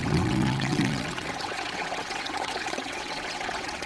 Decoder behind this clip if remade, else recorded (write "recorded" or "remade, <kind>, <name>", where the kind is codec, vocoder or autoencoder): remade, vocoder, WaveNeXt